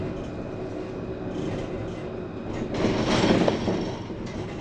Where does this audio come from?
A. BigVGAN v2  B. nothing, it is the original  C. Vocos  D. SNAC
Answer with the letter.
B